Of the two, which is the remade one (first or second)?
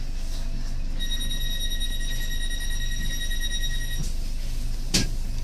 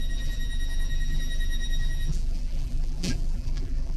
second